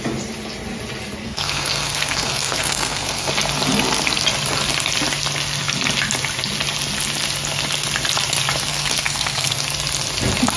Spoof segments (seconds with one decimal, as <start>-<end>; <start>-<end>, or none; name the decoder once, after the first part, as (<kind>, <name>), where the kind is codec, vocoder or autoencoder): 1.2-3.3 (codec, SNAC); 8.7-9.6